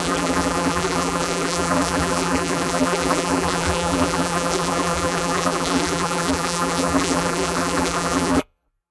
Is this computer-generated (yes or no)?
yes